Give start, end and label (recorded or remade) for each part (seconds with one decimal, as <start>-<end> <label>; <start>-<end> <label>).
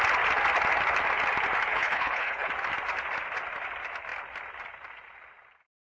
0.0-1.7 recorded; 1.7-2.5 remade; 2.5-5.9 recorded